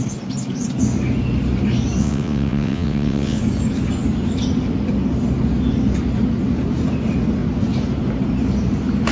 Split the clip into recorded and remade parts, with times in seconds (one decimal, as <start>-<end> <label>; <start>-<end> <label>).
0.0-2.0 recorded; 2.0-3.4 remade; 3.4-9.1 recorded